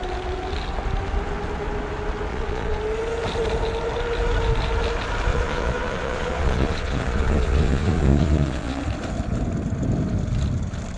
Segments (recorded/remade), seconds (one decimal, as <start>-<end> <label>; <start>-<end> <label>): 0.0-2.3 recorded; 2.3-2.8 remade; 2.8-5.3 recorded; 5.3-8.8 remade; 8.8-11.0 recorded